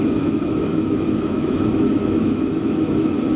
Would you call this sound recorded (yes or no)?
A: no